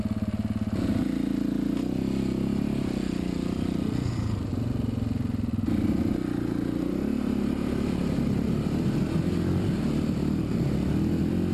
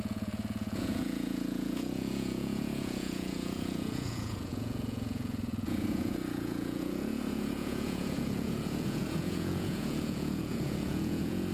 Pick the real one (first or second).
first